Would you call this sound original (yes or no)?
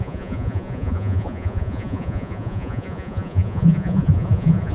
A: no